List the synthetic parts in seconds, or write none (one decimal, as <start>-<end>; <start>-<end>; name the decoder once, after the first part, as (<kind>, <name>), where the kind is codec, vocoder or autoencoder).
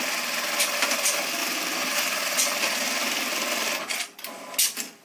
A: none